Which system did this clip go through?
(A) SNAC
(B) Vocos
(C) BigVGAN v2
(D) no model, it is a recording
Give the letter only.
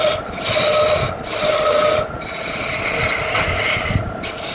D